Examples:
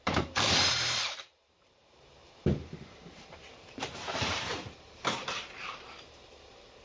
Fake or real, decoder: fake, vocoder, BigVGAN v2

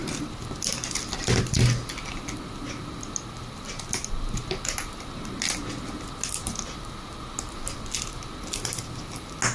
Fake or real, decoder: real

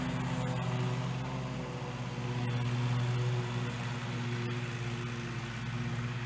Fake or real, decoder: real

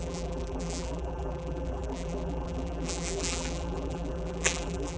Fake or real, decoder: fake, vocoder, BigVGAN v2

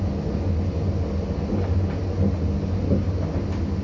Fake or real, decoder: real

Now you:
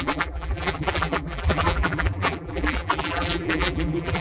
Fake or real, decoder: fake, vocoder, BigVGAN v2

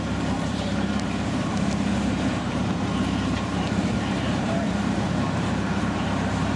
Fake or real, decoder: fake, vocoder, BigVGAN v2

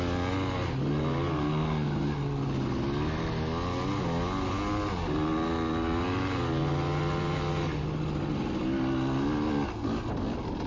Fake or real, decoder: real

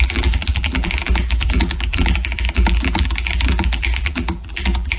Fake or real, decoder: fake, vocoder, BigVGAN v2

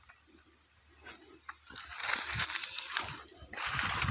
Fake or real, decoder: real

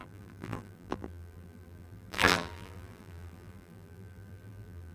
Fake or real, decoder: fake, vocoder, BigVGAN v2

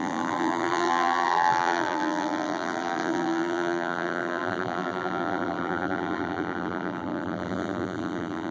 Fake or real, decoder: fake, vocoder, BigVGAN v2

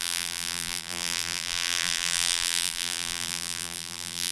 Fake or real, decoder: fake, vocoder, BigVGAN v2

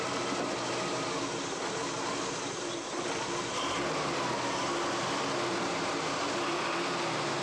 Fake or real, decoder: real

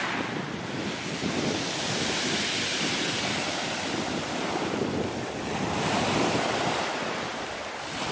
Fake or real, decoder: fake, vocoder, BigVGAN v2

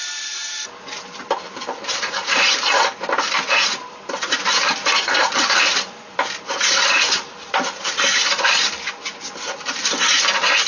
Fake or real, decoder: fake, vocoder, BigVGAN v2